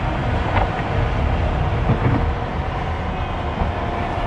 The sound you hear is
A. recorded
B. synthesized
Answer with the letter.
B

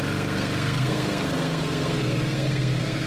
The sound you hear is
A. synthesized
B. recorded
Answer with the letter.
A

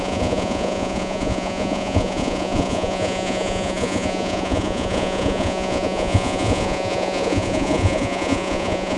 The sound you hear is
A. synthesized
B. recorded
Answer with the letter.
A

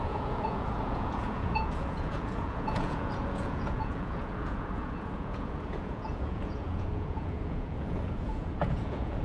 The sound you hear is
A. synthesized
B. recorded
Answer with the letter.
A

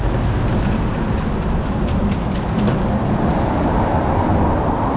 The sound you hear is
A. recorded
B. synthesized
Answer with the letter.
A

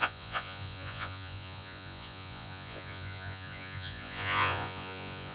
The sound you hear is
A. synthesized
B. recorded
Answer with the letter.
A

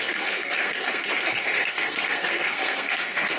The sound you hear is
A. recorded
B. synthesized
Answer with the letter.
B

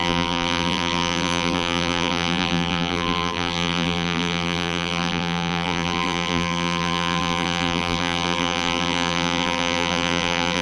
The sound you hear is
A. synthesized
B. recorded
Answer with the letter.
A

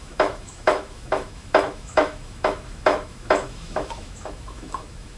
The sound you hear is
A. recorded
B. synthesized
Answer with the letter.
B